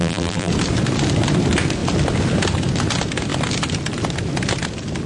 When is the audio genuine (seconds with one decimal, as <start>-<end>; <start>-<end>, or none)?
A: 0.5-5.1